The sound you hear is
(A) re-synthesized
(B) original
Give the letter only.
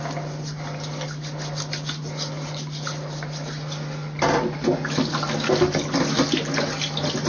B